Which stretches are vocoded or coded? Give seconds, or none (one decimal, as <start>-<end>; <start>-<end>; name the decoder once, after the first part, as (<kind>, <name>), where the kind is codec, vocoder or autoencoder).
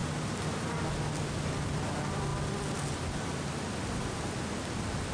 none